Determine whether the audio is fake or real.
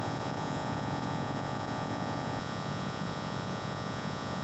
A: fake